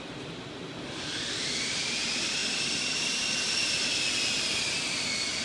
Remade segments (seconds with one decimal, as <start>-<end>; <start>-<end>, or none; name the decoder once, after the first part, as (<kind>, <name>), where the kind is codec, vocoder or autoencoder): none